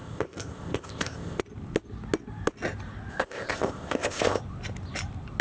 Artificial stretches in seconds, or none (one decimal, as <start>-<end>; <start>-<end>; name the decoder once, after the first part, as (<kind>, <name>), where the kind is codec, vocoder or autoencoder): 0.0-1.4 (codec, ZipCodec); 3.1-4.4